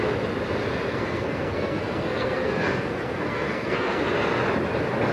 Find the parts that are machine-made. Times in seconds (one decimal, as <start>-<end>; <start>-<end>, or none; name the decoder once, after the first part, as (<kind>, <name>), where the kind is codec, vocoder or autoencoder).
0.9-4.0 (codec, SNAC)